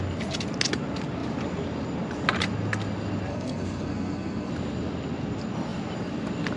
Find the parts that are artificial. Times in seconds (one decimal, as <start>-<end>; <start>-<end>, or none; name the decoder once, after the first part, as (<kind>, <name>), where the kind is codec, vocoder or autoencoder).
3.3-4.5 (codec, SNAC)